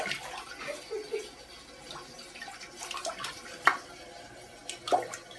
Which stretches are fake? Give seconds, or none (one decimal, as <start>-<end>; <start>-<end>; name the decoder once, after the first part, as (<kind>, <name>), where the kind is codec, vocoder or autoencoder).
none